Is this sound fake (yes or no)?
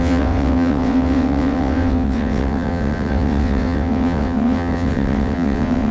yes